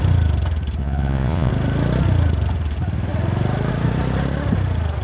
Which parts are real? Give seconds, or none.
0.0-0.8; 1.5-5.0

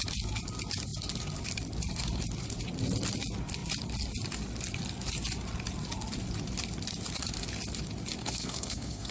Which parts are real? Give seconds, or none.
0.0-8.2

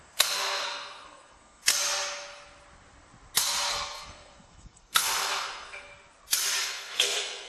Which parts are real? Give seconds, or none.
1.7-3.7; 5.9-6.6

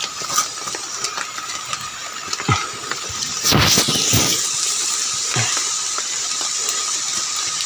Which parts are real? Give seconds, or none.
0.0-7.7

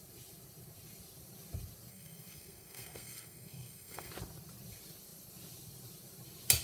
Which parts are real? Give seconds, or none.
0.0-1.9; 4.1-6.6